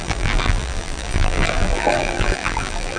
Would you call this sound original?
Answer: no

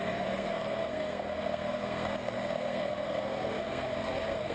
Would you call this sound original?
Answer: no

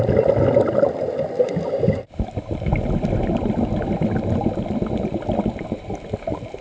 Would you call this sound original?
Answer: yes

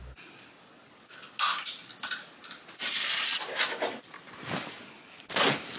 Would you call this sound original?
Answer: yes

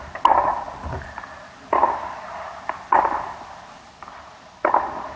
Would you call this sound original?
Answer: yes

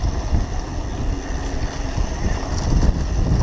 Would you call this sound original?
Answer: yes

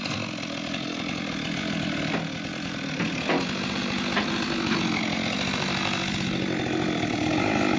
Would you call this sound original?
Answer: yes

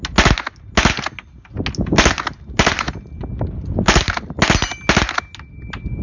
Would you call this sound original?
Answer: yes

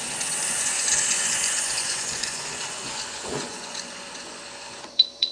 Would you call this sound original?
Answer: no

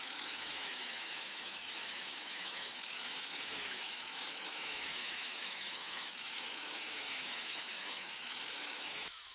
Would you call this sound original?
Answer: no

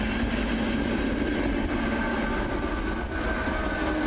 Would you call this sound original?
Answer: yes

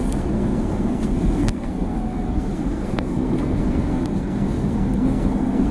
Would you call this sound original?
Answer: no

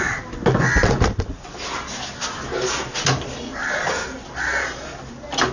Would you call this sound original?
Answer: yes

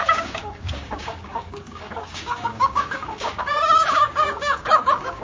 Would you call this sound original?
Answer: no